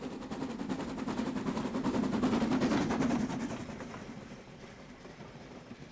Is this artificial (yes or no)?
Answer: no